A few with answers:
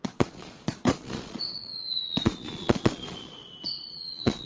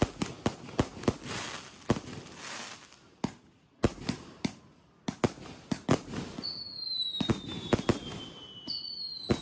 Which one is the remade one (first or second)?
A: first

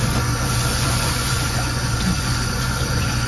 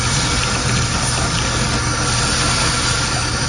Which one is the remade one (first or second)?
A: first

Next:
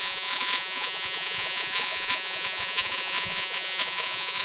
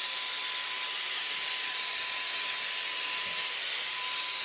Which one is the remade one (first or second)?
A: first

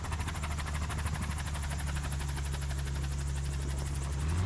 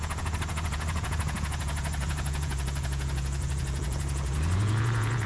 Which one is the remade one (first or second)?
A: second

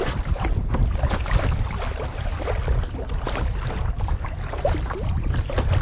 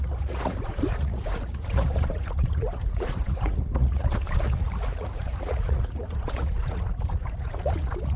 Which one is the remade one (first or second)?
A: second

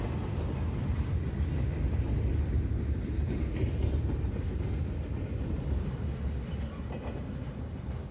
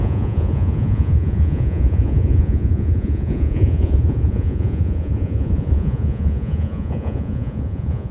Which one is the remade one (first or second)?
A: second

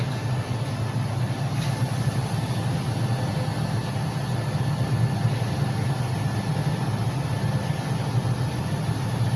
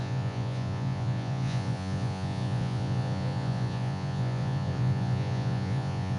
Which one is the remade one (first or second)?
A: second